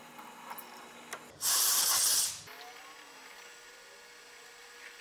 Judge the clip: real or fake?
real